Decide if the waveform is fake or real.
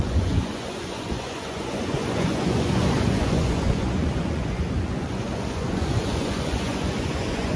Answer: fake